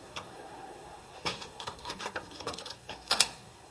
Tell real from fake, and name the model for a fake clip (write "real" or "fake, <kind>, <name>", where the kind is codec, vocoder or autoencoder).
fake, codec, SNAC